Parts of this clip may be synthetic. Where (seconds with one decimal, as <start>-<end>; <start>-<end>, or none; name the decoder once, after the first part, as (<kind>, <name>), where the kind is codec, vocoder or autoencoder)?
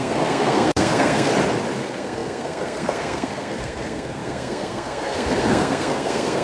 0.0-1.3 (codec, SNAC); 1.8-6.4